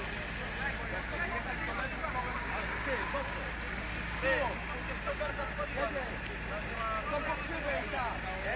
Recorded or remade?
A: recorded